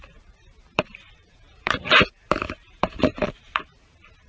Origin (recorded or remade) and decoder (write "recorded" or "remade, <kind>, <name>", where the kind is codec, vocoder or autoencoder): remade, vocoder, BigVGAN v2